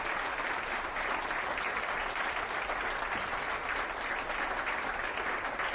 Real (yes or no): yes